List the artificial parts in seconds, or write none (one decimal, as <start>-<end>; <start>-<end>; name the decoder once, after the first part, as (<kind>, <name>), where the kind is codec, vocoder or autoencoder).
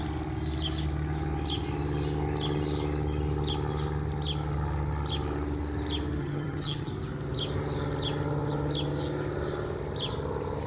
6.2-6.9 (vocoder, HiFi-GAN)